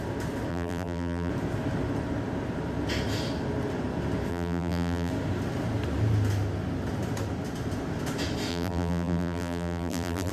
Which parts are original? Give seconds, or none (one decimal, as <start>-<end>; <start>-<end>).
0.0-0.5; 1.3-4.3; 5.1-8.5